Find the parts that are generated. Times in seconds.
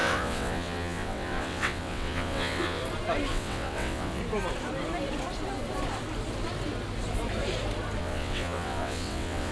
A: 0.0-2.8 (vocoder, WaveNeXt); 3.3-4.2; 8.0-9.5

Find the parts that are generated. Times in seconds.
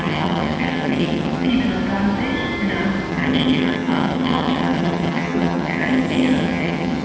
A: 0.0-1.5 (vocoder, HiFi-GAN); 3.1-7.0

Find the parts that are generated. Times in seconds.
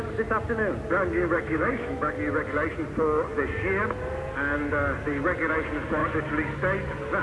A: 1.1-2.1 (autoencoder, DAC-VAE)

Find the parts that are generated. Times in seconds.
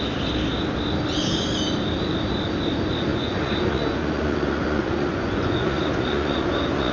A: 3.1-6.9 (vocoder, Vocos)